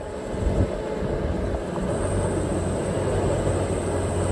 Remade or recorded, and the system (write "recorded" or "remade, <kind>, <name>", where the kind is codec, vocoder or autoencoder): recorded